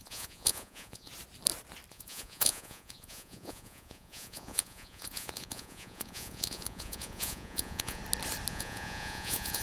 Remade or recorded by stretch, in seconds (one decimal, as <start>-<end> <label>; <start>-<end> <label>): 0.0-1.1 remade; 1.1-1.9 recorded; 1.9-8.0 remade; 8.0-8.5 recorded; 8.5-9.6 remade